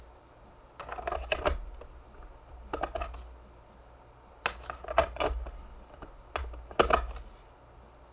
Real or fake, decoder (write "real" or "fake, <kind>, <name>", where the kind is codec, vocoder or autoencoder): real